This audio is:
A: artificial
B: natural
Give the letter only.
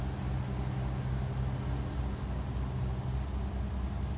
B